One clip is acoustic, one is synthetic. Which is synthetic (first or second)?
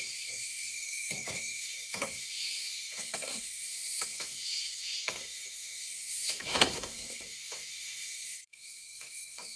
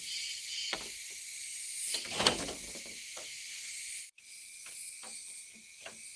first